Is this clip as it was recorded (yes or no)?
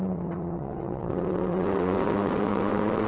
no